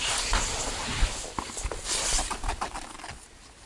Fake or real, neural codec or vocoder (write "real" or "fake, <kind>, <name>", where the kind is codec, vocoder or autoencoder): real